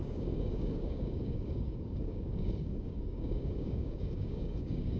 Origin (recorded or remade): remade